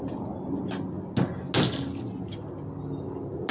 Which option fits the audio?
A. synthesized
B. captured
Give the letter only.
B